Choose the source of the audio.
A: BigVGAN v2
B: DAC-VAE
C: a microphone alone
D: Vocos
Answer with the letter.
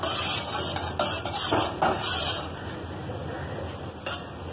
C